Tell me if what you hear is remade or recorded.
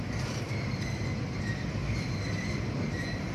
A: remade